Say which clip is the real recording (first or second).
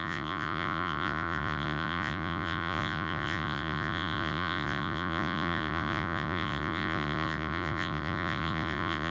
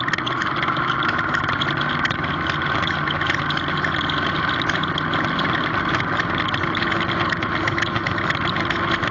second